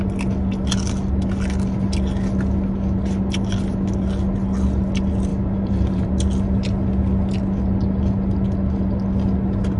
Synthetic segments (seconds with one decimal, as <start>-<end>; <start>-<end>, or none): 5.3-6.1